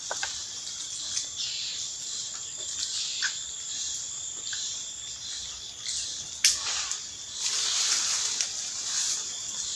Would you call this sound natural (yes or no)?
yes